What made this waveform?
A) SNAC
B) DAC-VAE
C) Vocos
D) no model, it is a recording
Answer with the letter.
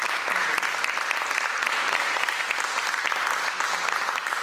D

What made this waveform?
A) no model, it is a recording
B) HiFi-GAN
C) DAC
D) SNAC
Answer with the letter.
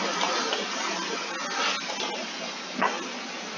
A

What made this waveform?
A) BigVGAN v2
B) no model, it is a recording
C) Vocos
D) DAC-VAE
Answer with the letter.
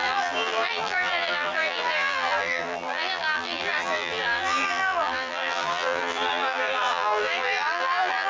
A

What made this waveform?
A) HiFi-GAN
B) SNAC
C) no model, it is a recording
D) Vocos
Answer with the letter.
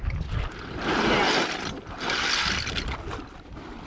C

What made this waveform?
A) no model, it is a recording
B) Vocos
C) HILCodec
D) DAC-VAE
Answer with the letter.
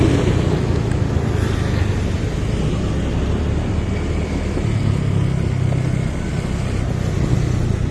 A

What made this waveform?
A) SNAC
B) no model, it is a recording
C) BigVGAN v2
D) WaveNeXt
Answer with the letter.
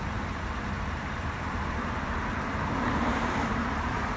C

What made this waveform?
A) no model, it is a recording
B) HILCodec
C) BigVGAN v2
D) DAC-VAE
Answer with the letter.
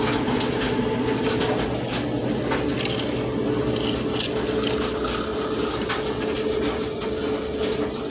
A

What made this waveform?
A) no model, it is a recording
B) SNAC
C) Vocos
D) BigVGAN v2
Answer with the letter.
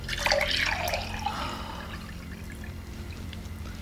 A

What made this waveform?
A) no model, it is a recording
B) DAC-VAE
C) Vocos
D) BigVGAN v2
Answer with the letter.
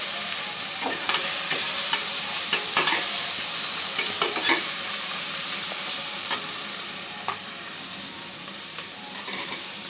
D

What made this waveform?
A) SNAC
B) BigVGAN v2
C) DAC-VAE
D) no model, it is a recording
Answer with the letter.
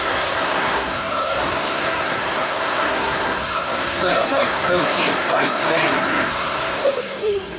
A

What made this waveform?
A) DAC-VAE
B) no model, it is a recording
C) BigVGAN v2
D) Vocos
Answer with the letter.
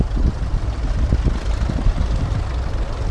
B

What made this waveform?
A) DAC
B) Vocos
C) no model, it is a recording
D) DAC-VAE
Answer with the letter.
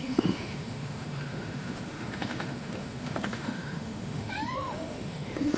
D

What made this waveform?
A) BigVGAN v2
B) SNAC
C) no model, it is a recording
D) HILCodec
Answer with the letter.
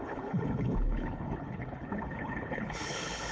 D